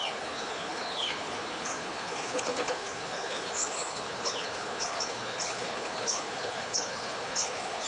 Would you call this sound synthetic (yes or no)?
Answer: yes